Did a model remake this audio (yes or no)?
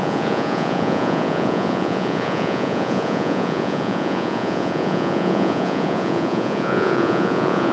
yes